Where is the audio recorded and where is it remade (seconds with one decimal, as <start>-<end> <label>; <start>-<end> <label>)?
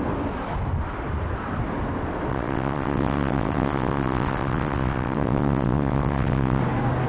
0.0-2.3 recorded; 2.3-6.6 remade; 6.6-7.1 recorded